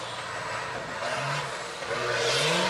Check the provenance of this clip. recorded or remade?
recorded